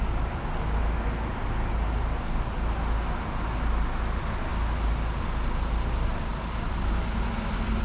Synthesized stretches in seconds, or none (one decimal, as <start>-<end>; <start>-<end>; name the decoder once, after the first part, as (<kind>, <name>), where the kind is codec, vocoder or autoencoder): none